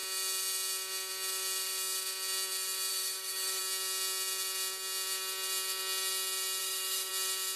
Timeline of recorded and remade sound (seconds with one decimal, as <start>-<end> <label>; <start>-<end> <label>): 0.0-2.9 recorded; 2.9-3.6 remade; 3.6-6.6 recorded; 6.6-7.1 remade; 7.1-7.6 recorded